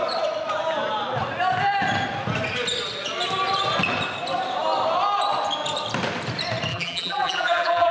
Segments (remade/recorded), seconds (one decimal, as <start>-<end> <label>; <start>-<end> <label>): 0.0-6.7 recorded; 6.7-7.9 remade